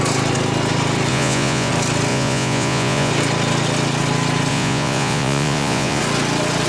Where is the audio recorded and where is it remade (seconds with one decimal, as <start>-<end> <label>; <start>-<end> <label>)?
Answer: 0.0-1.1 recorded; 1.1-1.7 remade; 1.7-2.1 recorded; 2.1-3.1 remade; 3.1-4.5 recorded; 4.5-6.0 remade; 6.0-6.7 recorded